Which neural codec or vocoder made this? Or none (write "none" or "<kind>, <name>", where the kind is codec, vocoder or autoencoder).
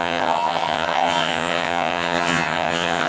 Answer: vocoder, HiFi-GAN